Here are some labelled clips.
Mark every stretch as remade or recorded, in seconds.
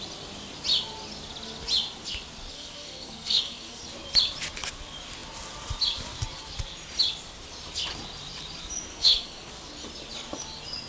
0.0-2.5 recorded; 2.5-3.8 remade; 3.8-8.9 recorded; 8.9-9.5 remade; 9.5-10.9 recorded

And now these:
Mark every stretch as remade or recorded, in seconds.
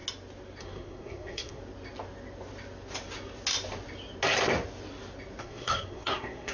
0.0-0.6 recorded; 0.6-1.6 remade; 1.6-5.4 recorded; 5.4-6.5 remade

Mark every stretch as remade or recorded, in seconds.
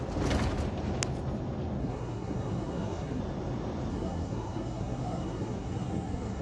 0.0-1.8 recorded; 1.8-3.2 remade; 3.2-3.9 recorded; 3.9-6.4 remade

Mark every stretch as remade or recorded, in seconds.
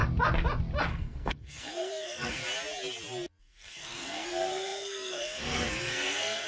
0.0-0.9 recorded; 0.9-2.4 remade; 2.4-3.4 recorded; 3.4-6.5 remade